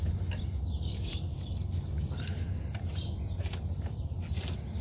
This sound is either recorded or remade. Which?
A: recorded